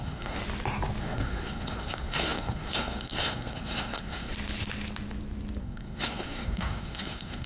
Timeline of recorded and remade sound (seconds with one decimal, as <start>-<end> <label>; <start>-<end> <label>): 0.0-0.4 remade; 0.4-1.0 recorded; 1.0-4.3 remade; 4.3-5.6 recorded; 5.6-7.5 remade